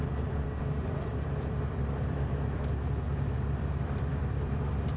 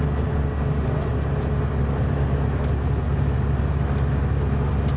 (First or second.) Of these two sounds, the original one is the second